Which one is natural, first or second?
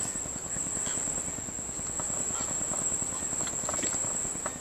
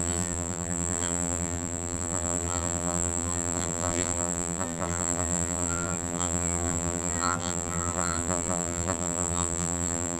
first